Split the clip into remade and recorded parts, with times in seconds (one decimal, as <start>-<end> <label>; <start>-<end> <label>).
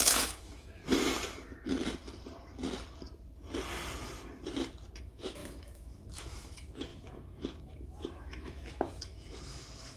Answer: 0.0-0.8 remade; 0.8-5.0 recorded; 5.0-10.0 remade